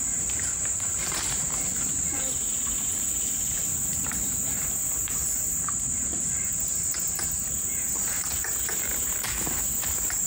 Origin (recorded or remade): remade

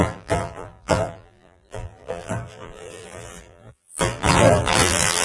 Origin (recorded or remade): remade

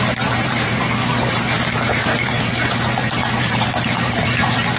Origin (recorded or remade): remade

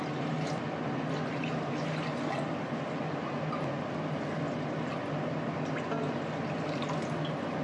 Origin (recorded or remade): recorded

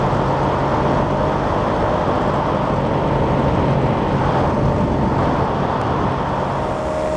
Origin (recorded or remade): recorded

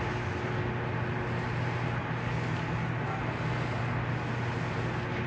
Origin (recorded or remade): recorded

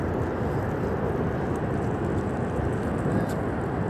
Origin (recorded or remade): recorded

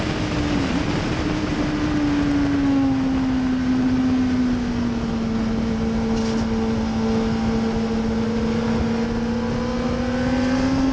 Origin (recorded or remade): recorded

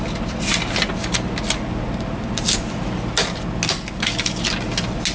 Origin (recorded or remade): recorded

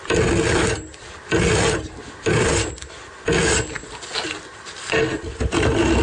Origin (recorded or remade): recorded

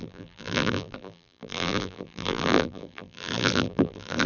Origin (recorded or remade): remade